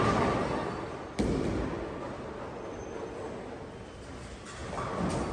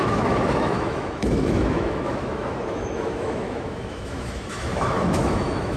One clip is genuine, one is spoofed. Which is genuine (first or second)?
first